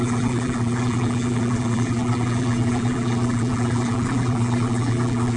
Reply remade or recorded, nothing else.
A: remade